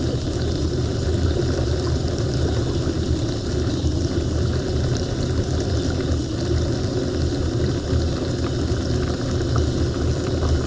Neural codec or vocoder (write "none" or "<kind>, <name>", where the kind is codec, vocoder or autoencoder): none